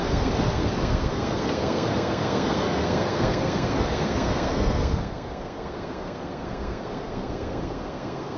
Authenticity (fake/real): fake